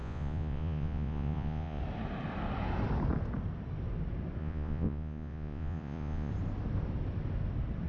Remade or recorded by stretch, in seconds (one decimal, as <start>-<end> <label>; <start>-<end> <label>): 0.0-1.8 remade; 1.8-4.4 recorded; 4.4-6.3 remade; 6.3-7.9 recorded